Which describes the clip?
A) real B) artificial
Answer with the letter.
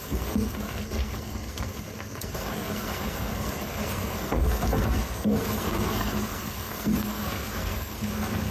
B